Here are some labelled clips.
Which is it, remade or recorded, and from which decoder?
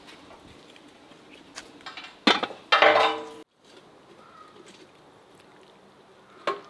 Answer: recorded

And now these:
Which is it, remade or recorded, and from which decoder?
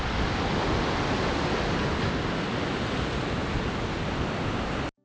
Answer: recorded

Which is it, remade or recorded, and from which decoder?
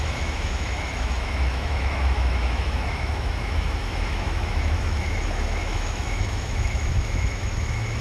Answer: remade, autoencoder, DAC-VAE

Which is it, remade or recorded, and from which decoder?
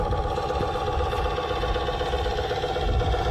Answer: recorded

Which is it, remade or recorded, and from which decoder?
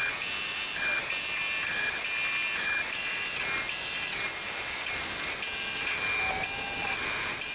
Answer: recorded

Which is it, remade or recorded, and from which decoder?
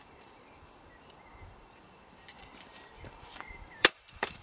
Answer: remade, vocoder, BigVGAN v2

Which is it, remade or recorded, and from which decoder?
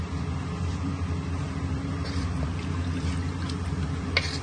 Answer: recorded